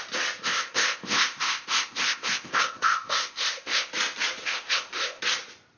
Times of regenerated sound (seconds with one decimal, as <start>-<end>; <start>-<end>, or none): 0.4-3.9; 4.4-5.2

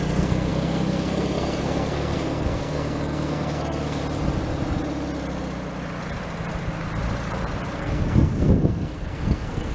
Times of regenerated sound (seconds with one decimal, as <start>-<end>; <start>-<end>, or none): 0.0-4.0; 7.7-9.7

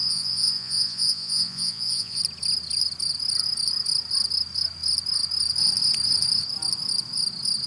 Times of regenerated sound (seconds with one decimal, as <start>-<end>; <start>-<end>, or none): 0.0-2.2

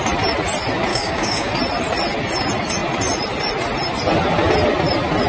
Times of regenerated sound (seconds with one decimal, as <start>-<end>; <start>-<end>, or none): 0.9-1.5

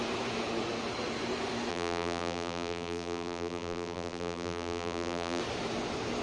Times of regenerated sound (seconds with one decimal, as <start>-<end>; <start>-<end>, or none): 1.7-5.4